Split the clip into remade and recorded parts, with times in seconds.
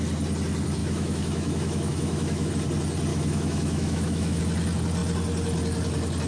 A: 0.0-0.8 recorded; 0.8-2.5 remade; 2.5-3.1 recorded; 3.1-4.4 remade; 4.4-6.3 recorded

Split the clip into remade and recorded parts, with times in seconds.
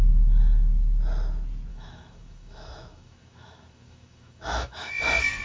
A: 0.0-1.7 recorded; 1.7-4.9 remade; 4.9-5.4 recorded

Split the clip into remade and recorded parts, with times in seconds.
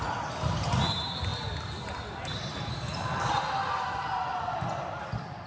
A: 0.0-5.5 recorded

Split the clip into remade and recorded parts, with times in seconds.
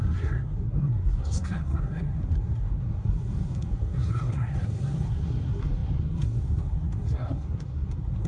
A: 0.0-8.3 remade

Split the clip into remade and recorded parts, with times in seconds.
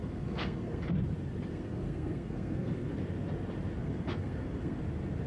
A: 0.0-0.8 remade; 0.8-1.5 recorded; 1.5-2.9 remade; 2.9-3.8 recorded; 3.8-4.8 remade; 4.8-5.3 recorded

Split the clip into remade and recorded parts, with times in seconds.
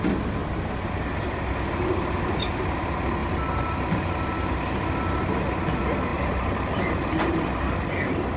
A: 0.0-8.4 recorded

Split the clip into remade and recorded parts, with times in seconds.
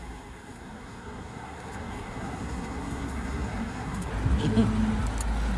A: 0.0-4.1 remade; 4.1-5.6 recorded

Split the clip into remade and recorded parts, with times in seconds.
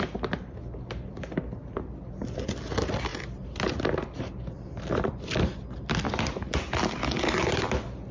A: 0.0-8.1 recorded